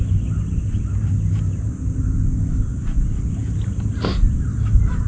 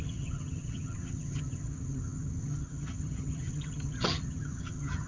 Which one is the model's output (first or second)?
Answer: second